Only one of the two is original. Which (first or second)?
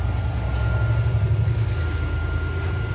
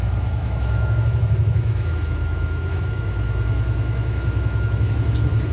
first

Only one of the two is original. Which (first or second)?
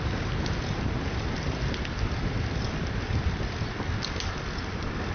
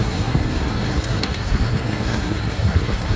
first